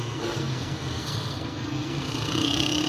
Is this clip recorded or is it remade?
remade